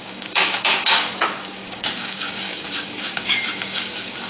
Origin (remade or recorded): remade